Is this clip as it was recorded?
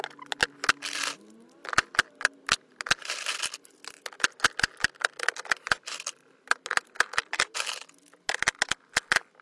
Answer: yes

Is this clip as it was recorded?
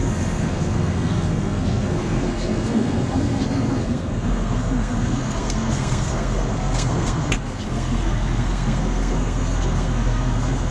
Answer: no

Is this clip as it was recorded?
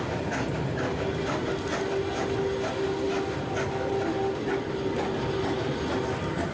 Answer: yes